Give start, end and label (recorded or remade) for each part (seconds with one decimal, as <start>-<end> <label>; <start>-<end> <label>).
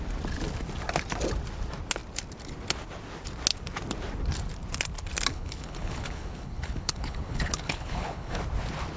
0.0-5.3 recorded; 5.3-8.4 remade; 8.4-9.0 recorded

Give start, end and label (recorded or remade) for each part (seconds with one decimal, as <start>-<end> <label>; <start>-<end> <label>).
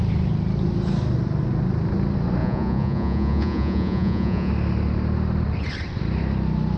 0.0-2.4 recorded; 2.4-4.5 remade; 4.5-6.8 recorded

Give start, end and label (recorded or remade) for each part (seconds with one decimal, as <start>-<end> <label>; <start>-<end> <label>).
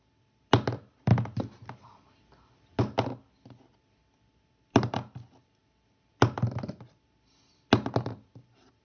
0.0-8.8 recorded